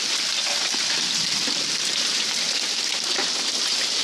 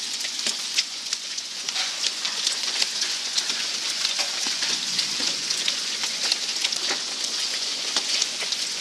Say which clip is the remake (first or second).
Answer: second